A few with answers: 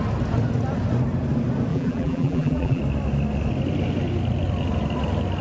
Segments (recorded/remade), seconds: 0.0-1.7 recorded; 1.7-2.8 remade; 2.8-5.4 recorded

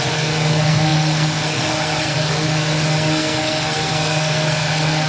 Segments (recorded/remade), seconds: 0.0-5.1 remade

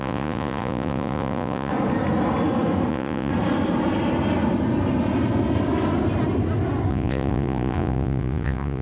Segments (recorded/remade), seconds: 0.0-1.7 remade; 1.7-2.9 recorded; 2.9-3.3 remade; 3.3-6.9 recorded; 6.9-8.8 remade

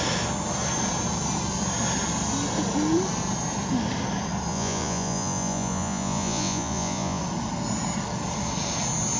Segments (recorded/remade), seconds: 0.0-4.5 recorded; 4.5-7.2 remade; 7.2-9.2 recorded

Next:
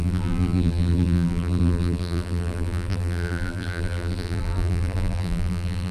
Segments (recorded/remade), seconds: 0.0-5.9 remade